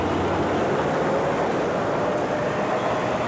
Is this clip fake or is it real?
real